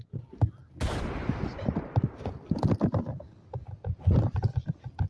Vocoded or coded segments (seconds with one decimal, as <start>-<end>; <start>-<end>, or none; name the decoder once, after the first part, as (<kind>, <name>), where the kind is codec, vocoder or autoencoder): none